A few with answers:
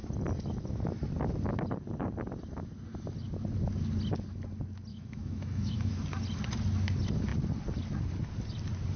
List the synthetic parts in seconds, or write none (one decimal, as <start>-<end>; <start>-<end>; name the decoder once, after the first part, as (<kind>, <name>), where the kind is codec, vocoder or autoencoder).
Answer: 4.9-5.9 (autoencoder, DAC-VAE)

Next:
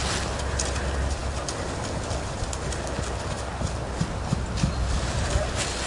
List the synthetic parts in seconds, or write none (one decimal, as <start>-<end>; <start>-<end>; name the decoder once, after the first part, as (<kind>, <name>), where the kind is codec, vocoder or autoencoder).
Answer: none

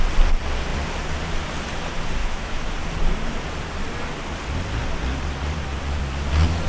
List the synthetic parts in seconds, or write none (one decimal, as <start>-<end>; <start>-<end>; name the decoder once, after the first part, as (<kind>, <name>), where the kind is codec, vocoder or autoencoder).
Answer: 2.2-2.7 (autoencoder, DAC-VAE)

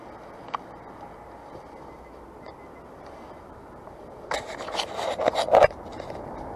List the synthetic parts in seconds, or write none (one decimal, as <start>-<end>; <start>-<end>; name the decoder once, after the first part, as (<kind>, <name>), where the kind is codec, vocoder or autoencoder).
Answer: none

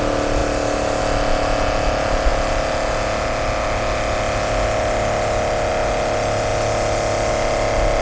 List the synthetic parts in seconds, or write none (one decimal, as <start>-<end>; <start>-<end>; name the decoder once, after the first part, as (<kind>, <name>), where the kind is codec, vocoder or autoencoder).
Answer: none